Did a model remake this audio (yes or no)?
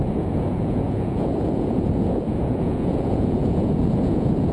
yes